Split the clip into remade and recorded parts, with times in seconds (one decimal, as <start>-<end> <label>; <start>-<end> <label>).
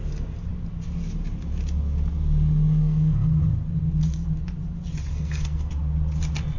0.0-2.8 recorded; 2.8-3.4 remade; 3.4-5.1 recorded; 5.1-5.7 remade; 5.7-6.6 recorded